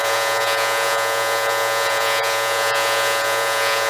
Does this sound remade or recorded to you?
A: remade